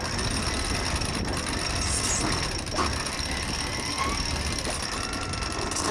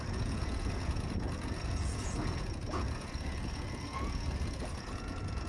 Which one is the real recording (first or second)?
first